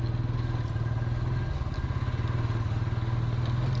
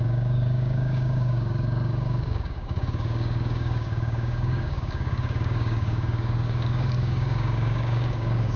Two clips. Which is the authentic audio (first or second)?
first